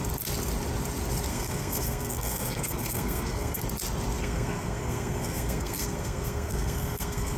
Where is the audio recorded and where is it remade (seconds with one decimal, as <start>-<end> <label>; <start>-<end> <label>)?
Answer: 0.0-1.3 recorded; 1.3-3.6 remade; 3.6-4.2 recorded; 4.2-7.4 remade